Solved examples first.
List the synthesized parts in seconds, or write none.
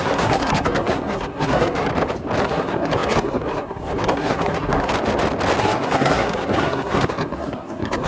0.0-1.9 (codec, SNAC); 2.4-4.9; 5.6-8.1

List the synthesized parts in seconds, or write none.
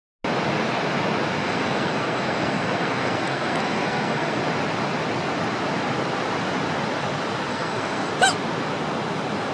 1.4-4.4 (codec, SNAC); 7.5-8.1